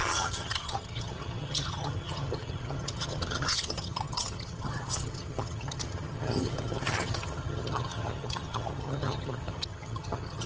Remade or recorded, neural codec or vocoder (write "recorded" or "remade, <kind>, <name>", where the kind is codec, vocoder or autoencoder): remade, vocoder, HiFi-GAN